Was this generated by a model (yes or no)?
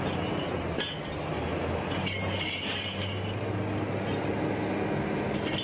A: no